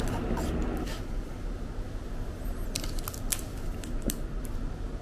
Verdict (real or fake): real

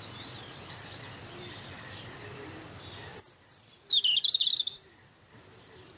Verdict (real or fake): real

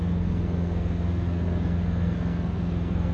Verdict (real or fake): fake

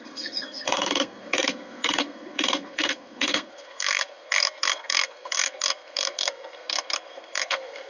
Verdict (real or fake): fake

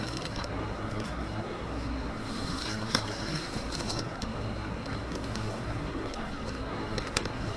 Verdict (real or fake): fake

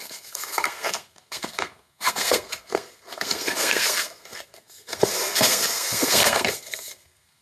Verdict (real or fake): fake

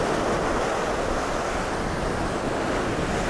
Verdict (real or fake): real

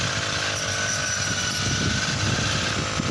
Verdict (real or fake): real